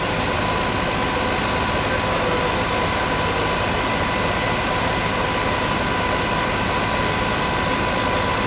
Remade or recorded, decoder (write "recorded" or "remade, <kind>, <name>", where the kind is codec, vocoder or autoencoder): recorded